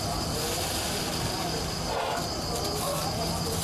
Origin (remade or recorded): recorded